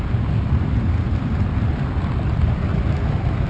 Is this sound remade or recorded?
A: recorded